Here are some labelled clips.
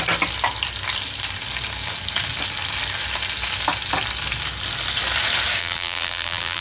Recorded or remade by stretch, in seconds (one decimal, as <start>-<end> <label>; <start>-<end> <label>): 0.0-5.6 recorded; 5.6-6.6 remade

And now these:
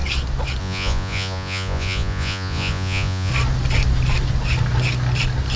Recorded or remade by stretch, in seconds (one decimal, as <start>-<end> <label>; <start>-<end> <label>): 0.0-0.6 recorded; 0.6-3.3 remade; 3.3-5.6 recorded

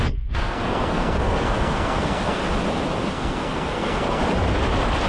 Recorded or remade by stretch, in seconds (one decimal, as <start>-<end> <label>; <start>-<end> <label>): 0.0-2.4 remade; 2.4-3.1 recorded; 3.1-4.2 remade; 4.2-5.1 recorded

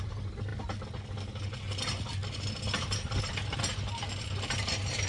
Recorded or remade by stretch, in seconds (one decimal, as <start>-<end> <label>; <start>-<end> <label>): 0.0-5.1 recorded

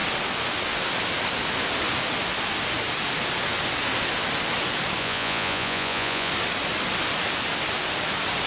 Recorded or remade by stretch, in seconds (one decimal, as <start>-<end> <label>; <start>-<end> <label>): 0.0-5.0 recorded; 5.0-6.3 remade; 6.3-8.5 recorded